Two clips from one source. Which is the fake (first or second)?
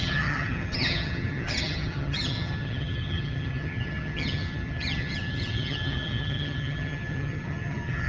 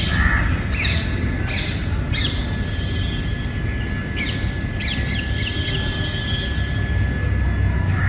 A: first